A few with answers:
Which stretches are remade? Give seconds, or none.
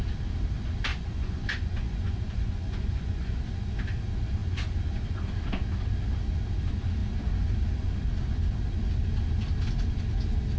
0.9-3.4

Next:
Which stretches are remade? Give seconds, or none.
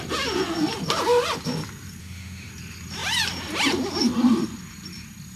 2.0-2.5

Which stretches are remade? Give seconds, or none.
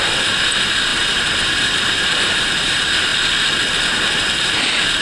0.0-3.1; 4.2-5.0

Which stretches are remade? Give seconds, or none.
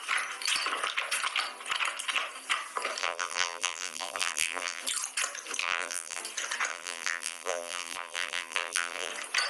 3.0-4.8; 5.6-6.2; 6.7-9.1